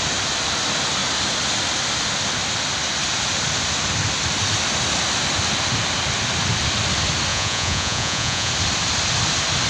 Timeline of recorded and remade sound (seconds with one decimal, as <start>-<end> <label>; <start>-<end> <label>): 0.0-7.3 recorded; 7.3-8.5 remade; 8.5-9.7 recorded

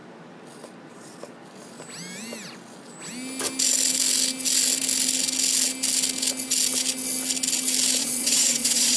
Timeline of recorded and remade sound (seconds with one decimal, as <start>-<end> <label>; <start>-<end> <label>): 0.0-8.0 recorded; 8.0-9.0 remade

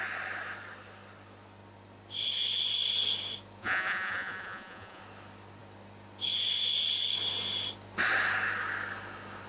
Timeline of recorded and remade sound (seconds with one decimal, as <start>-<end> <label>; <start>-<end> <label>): 0.0-3.6 recorded; 3.6-5.0 remade; 5.0-9.5 recorded

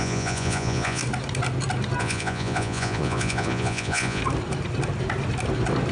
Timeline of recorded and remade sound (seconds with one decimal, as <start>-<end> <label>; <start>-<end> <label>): 0.0-1.0 remade; 1.0-2.0 recorded; 2.0-4.2 remade; 4.2-5.9 recorded

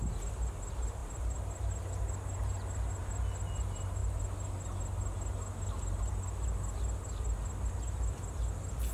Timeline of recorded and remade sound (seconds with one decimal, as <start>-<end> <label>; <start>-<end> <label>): 0.0-8.9 recorded

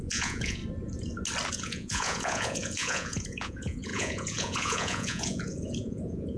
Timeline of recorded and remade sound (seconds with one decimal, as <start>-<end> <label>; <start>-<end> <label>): 0.0-0.6 remade; 0.6-1.5 recorded; 1.5-6.4 remade

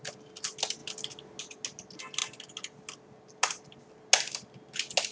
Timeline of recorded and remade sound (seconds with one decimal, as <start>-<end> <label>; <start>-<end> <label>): 0.0-5.1 recorded